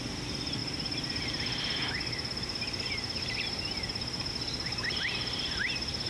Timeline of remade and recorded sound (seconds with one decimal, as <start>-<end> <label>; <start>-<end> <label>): 0.0-6.1 recorded